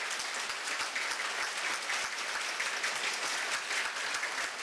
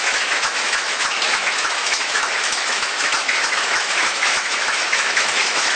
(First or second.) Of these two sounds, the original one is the first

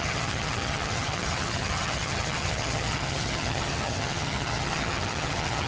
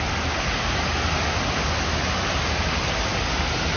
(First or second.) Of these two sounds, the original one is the second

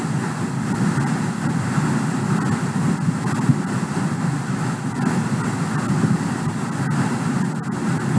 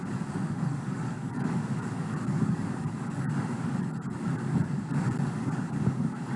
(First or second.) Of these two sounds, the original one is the first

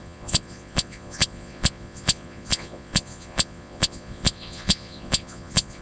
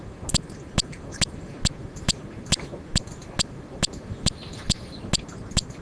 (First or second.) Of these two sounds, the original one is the second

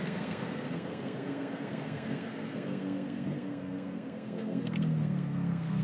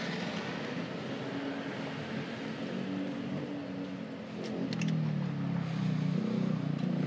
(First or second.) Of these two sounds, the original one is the second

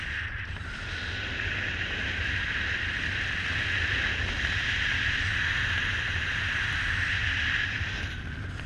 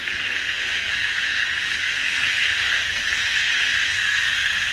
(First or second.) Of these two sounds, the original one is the first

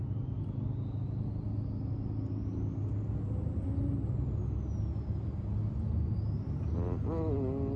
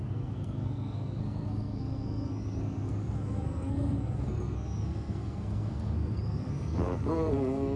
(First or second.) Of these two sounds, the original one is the first